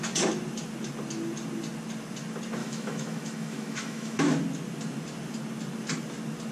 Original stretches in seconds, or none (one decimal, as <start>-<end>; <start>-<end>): 0.0-2.6; 4.3-6.5